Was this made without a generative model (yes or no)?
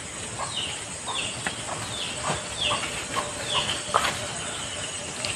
yes